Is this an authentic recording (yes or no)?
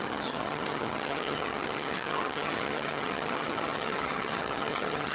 no